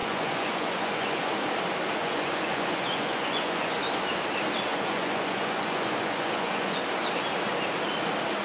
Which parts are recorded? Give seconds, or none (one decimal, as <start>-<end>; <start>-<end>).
1.3-2.0; 3.8-4.7; 6.8-8.4